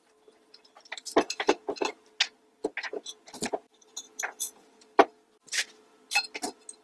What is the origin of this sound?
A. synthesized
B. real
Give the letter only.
B